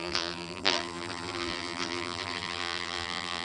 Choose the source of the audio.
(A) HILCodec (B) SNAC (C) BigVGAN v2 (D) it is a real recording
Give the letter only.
C